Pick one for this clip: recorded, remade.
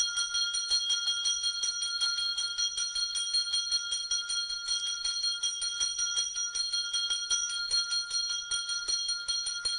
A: recorded